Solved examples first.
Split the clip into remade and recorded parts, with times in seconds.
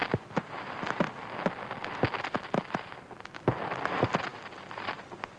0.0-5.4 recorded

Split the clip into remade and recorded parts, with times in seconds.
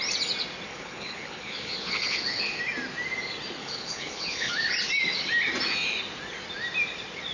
0.0-0.7 recorded; 0.7-2.6 remade; 2.6-3.6 recorded; 3.6-4.5 remade; 4.5-7.3 recorded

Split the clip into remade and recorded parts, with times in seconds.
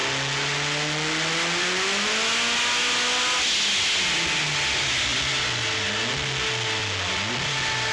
0.0-7.9 recorded